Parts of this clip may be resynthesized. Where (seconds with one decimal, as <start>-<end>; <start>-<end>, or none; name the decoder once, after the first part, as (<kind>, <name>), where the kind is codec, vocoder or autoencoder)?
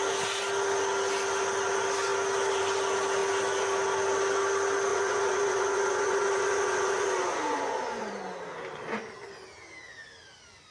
4.9-8.1 (vocoder, Vocos)